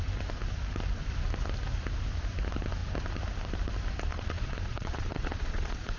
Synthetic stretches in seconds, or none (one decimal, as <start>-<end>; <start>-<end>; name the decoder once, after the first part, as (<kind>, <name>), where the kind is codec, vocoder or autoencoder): 4.1-6.0 (vocoder, Vocos)